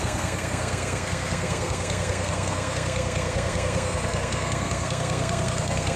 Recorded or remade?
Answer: remade